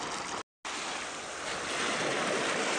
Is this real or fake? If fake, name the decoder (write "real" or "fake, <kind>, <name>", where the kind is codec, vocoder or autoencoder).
real